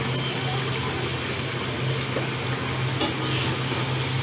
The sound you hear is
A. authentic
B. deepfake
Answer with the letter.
A